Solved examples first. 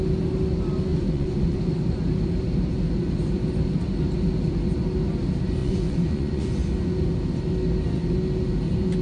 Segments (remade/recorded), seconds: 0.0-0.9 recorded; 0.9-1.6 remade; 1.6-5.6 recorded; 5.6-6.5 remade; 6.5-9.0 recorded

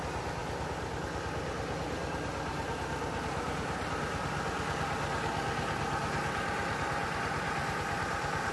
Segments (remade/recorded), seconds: 0.0-8.5 recorded

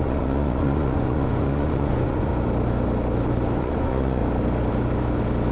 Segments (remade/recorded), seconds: 0.0-2.3 remade; 2.3-3.6 recorded; 3.6-4.2 remade; 4.2-5.5 recorded

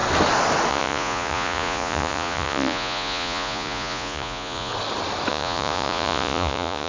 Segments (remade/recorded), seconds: 0.0-0.7 recorded; 0.7-4.7 remade; 4.7-5.3 recorded; 5.3-6.9 remade

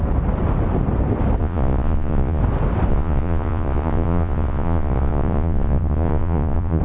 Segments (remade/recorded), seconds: 0.0-1.4 recorded; 1.4-2.4 remade; 2.4-2.9 recorded; 2.9-6.8 remade